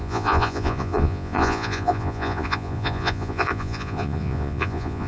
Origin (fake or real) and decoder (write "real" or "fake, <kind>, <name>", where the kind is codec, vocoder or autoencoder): fake, vocoder, Vocos